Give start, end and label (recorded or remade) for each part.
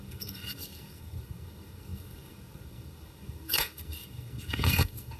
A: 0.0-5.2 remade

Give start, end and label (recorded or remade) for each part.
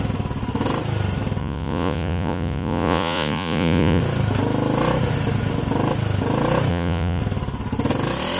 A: 0.0-1.4 recorded; 1.4-4.0 remade; 4.0-6.7 recorded; 6.7-7.2 remade; 7.2-8.4 recorded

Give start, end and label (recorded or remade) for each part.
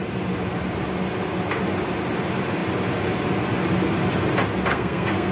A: 0.0-4.7 recorded; 4.7-5.3 remade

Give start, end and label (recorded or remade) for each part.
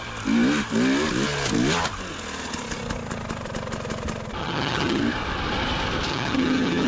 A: 0.0-4.4 recorded; 4.4-5.0 remade; 5.0-6.1 recorded; 6.1-6.9 remade